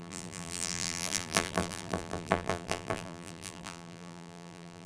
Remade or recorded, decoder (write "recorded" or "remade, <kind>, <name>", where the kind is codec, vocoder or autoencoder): remade, vocoder, BigVGAN v2